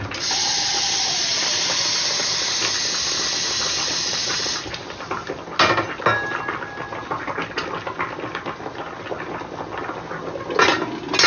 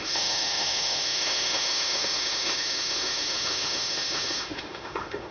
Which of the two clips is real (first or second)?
first